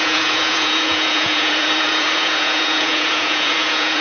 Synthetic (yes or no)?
yes